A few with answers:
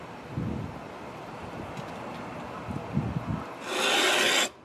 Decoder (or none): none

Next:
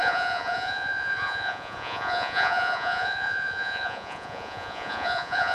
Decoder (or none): vocoder, Vocos